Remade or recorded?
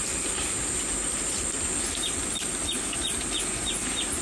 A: recorded